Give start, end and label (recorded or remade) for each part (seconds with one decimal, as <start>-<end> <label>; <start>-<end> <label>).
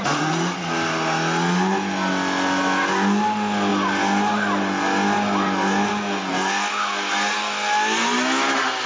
0.0-8.9 recorded